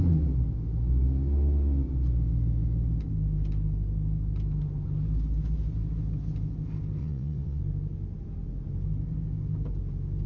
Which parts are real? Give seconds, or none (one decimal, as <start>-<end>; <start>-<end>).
0.0-7.0; 7.6-10.3